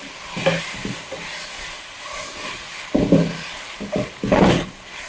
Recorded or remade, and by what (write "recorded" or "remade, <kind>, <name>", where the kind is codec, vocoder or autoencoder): recorded